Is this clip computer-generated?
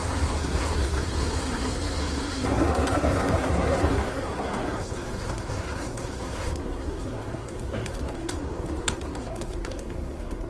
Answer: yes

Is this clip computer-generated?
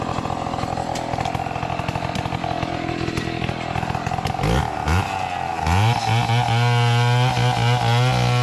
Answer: no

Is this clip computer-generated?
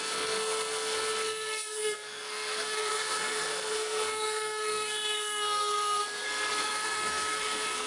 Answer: yes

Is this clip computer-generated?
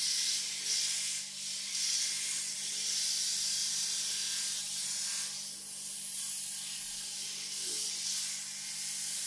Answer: no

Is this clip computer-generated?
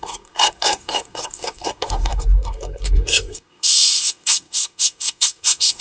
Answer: yes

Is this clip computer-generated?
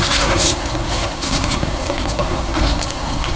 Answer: yes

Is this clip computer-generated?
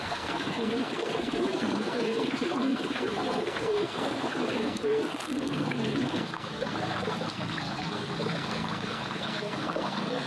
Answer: yes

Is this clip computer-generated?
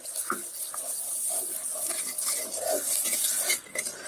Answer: no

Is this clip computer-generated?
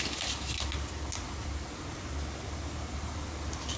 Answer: no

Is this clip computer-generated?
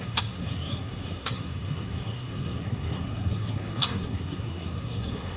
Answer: yes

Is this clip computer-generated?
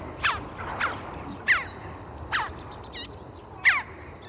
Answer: no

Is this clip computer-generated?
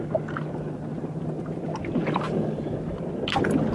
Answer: no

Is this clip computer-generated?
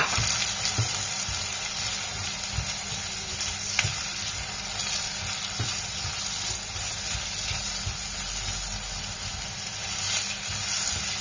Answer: no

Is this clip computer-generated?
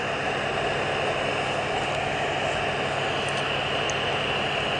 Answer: no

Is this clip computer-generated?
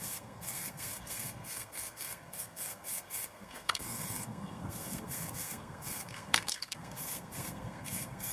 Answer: yes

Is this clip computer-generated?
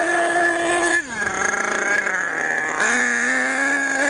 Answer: no